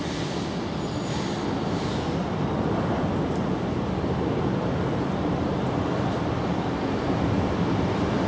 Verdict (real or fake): real